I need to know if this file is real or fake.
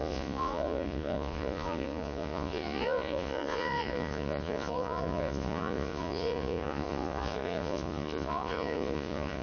fake